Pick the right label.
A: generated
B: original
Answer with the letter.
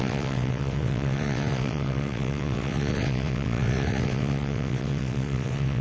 A